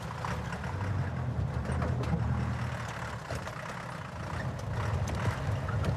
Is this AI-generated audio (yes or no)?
no